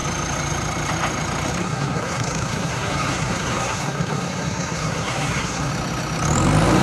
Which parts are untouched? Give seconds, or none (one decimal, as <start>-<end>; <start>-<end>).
0.0-1.6; 5.7-6.8